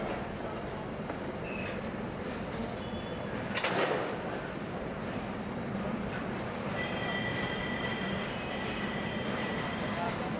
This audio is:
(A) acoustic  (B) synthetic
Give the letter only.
B